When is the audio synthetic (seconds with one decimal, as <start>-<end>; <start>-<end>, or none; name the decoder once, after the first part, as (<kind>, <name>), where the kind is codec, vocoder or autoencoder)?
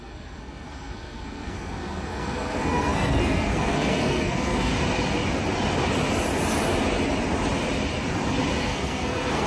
0.0-4.7 (codec, SNAC); 8.5-9.5